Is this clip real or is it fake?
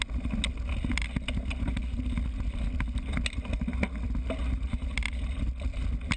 real